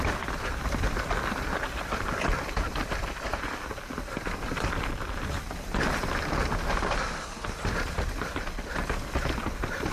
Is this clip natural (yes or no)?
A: yes